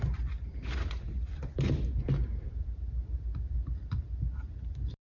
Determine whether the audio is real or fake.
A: fake